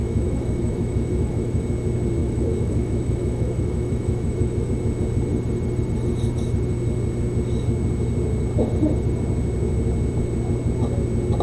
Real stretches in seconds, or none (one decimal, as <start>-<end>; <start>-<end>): 1.6-2.2; 4.7-11.4